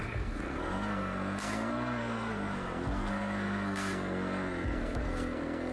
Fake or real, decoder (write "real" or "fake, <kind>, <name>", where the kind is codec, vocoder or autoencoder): fake, codec, SNAC